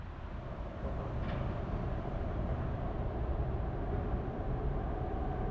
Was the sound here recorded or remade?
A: recorded